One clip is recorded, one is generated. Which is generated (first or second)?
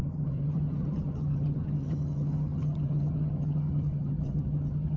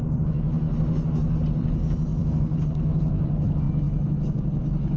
first